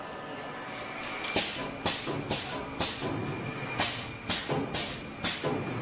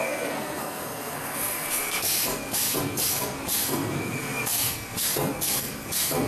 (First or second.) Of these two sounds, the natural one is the first